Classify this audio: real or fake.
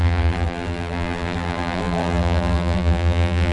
fake